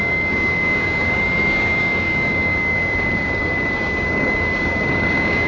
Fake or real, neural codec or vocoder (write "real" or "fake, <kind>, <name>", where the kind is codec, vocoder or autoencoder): fake, codec, DAC